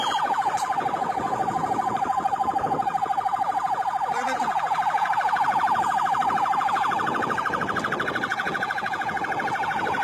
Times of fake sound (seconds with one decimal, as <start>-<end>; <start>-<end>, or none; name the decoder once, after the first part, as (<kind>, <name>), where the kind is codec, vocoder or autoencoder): 8.3-9.2 (vocoder, Vocos)